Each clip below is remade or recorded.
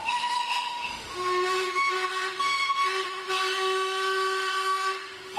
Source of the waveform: remade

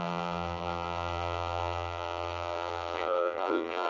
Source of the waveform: remade